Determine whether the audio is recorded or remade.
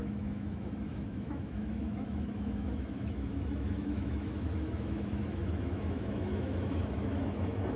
remade